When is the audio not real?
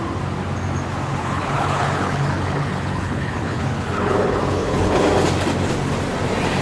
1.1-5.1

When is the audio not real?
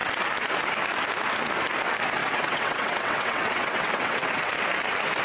2.2-4.5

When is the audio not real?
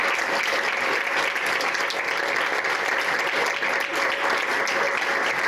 none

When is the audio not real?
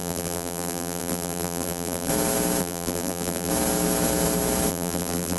0.0-2.1; 2.6-3.5; 4.7-5.4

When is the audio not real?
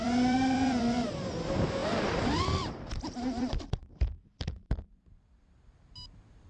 0.0-6.5